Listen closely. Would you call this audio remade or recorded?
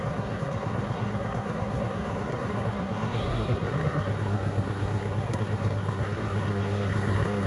remade